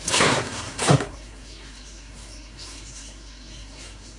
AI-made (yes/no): yes